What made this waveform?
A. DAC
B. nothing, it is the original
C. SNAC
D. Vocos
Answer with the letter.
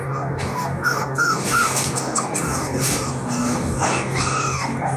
A